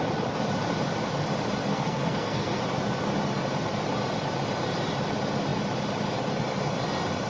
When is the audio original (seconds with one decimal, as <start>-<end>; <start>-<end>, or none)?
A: 0.0-1.7; 2.6-7.3